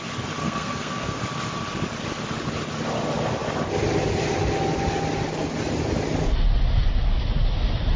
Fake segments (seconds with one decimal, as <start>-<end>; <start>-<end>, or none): 0.4-1.2